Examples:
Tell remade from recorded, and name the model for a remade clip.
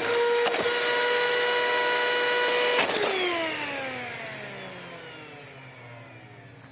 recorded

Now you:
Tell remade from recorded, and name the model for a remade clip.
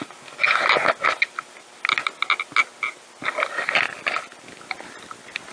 recorded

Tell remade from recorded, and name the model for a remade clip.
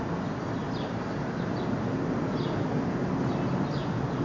recorded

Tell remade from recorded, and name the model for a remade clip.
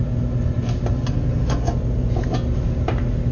recorded